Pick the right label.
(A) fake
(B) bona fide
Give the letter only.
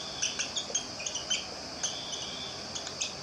B